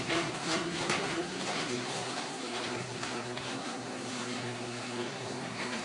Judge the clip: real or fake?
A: fake